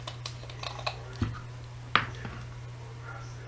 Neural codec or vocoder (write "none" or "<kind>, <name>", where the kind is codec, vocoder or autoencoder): none